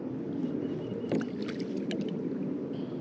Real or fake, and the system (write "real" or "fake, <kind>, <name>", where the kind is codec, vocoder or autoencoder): real